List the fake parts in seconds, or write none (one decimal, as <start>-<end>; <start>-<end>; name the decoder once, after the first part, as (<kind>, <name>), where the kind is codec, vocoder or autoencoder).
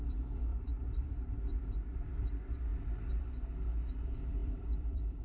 0.5-1.6 (vocoder, BigVGAN v2); 4.4-5.2